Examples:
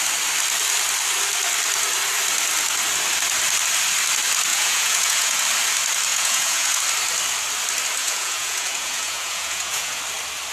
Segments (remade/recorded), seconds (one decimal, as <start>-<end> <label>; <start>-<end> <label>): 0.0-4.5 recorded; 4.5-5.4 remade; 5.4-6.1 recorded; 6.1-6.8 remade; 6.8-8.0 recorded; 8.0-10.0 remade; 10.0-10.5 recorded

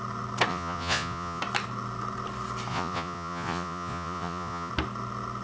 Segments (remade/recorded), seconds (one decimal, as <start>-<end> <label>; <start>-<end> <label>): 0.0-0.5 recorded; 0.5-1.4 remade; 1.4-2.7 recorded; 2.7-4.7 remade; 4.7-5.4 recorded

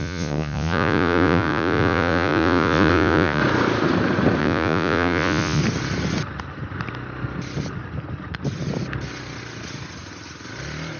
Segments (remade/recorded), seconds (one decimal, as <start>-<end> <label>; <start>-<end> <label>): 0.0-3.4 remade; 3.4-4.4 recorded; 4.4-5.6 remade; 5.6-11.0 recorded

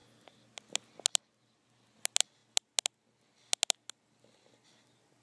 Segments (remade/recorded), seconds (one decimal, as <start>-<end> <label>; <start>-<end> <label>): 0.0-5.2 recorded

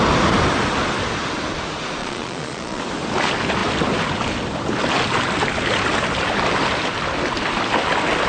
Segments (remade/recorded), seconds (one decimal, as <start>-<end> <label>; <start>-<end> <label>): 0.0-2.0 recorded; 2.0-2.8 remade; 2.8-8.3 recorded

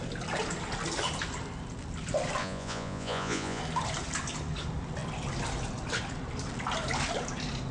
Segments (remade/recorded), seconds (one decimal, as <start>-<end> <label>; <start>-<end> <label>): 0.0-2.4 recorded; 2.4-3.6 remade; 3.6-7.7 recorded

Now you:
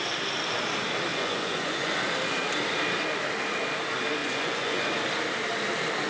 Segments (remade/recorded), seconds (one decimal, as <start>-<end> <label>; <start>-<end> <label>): 0.0-1.1 recorded; 1.1-2.0 remade; 2.0-4.2 recorded; 4.2-4.9 remade; 4.9-6.1 recorded

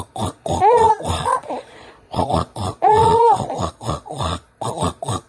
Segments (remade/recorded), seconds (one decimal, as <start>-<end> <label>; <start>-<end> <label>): 0.0-5.3 remade